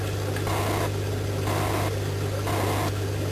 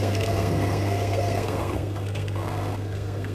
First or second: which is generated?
second